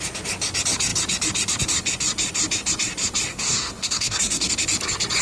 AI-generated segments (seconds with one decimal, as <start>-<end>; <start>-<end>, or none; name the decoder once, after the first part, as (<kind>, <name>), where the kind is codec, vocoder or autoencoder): 3.3-4.5 (codec, SNAC)